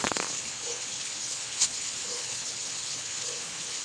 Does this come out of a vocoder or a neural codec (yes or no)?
yes